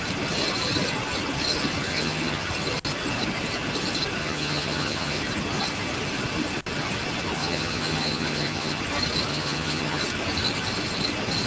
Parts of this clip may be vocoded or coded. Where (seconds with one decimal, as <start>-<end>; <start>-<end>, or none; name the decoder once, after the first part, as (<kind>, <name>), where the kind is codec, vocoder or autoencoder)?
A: 1.9-2.5 (vocoder, HiFi-GAN); 4.2-5.2; 7.4-8.8; 9.3-10.0